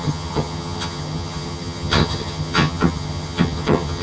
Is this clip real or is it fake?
fake